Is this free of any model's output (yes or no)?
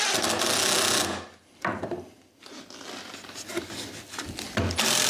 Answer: yes